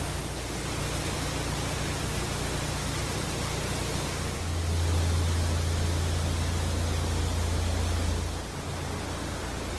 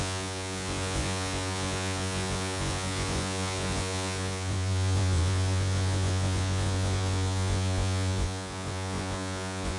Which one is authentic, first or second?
first